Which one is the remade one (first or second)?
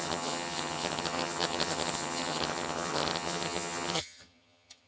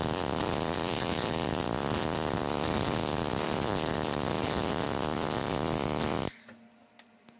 first